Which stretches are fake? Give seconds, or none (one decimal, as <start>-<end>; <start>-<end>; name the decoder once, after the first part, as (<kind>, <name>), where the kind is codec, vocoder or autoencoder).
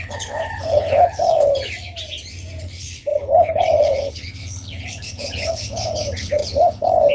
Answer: 0.0-1.5 (codec, HILCodec); 2.6-7.1